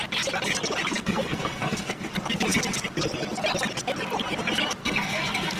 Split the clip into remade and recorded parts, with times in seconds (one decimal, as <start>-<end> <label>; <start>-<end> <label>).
0.0-0.9 recorded; 0.9-2.1 remade; 2.1-4.8 recorded; 4.8-5.6 remade